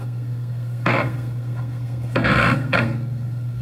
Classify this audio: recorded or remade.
remade